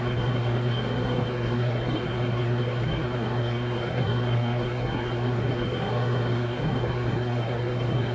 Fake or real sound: fake